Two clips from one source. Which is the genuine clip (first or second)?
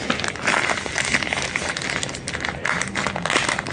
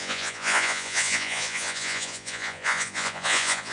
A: first